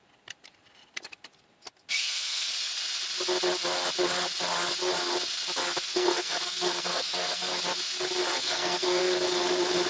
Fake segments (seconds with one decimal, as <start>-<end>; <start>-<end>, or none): 2.0-2.5; 5.9-7.6; 8.3-9.0